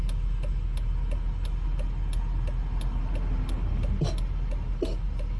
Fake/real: real